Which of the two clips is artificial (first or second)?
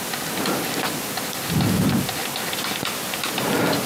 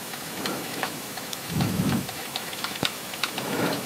second